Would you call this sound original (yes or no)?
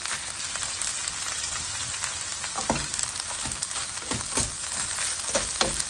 yes